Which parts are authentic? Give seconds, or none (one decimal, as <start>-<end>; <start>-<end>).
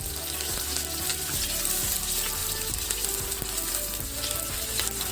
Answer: 0.0-1.1; 1.6-5.1